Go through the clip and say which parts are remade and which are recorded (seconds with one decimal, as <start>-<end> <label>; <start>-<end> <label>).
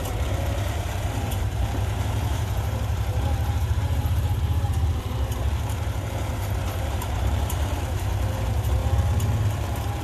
0.0-8.8 remade; 8.8-9.5 recorded; 9.5-10.0 remade